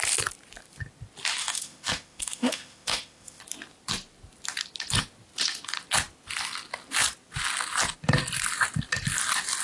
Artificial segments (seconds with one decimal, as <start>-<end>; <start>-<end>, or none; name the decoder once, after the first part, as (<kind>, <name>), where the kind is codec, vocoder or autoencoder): 1.4-3.4 (autoencoder, DAC-VAE)